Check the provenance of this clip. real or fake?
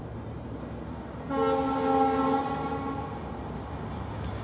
real